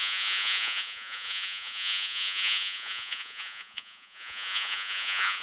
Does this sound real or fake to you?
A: fake